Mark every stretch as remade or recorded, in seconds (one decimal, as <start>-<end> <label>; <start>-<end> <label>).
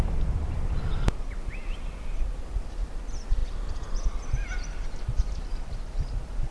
0.0-6.5 remade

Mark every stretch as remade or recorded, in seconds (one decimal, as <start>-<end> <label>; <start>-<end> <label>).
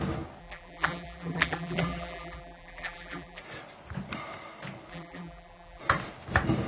0.0-0.4 recorded; 0.4-3.4 remade; 3.4-4.9 recorded; 4.9-5.8 remade; 5.8-6.7 recorded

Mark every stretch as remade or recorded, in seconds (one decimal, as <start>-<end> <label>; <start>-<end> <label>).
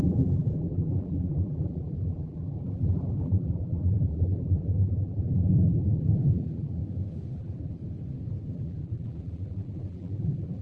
0.0-6.8 remade; 6.8-7.3 recorded; 7.3-7.8 remade; 7.8-8.5 recorded; 8.5-10.6 remade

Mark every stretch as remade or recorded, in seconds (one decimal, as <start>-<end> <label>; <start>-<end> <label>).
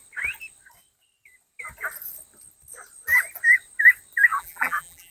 0.0-4.3 recorded; 4.3-5.1 remade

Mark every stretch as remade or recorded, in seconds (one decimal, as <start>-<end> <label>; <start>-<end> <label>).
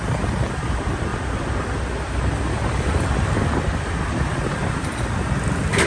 0.0-5.9 recorded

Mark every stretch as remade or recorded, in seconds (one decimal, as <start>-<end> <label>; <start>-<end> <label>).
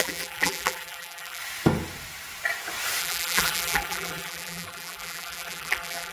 0.0-1.4 remade; 1.4-3.0 recorded; 3.0-6.1 remade